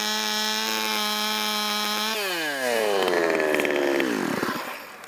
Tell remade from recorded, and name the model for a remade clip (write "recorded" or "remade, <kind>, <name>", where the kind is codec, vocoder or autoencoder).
recorded